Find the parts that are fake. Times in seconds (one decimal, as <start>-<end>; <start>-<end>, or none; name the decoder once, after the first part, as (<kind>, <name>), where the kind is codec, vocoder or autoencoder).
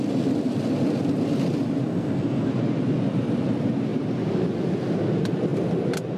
1.9-2.5 (codec, SNAC)